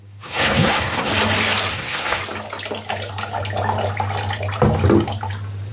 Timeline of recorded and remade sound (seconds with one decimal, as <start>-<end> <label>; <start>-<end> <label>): 0.0-1.1 remade; 1.1-1.7 recorded; 1.7-2.2 remade; 2.2-5.7 recorded